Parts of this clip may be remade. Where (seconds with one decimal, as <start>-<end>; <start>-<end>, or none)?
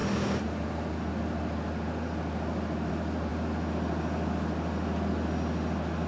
none